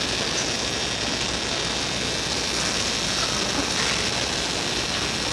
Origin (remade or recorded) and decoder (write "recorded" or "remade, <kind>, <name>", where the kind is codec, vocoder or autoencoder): recorded